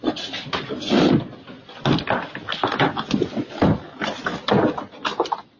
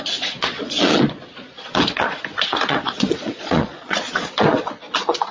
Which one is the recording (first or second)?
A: first